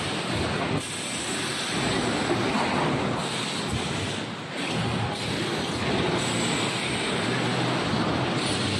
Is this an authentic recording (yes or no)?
yes